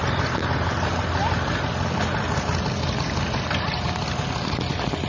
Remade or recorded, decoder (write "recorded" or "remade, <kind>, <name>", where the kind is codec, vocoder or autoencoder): recorded